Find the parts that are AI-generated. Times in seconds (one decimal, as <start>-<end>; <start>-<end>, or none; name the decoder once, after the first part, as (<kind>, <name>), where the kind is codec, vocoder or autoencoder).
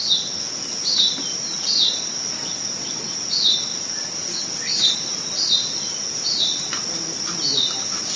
none